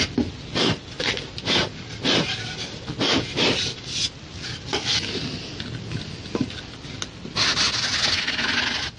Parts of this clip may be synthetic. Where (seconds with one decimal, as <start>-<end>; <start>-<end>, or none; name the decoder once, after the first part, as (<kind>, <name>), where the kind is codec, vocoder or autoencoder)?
none